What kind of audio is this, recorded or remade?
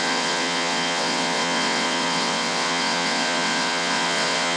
remade